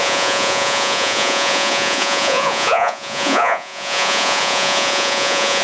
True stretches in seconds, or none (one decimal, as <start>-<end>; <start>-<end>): none